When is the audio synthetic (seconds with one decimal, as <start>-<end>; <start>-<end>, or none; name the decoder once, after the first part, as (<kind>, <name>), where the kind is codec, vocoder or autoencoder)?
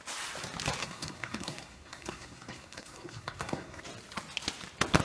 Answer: 0.8-3.8 (codec, SNAC)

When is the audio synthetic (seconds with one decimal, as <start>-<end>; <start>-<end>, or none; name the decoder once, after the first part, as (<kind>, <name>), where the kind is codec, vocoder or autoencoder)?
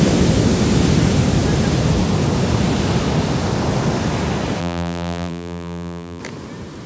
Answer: 4.6-6.2 (vocoder, BigVGAN v2)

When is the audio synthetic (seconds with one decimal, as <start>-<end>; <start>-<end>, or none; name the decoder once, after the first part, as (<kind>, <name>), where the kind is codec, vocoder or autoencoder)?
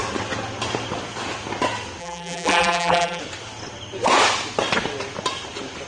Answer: 2.0-3.2 (vocoder, BigVGAN v2)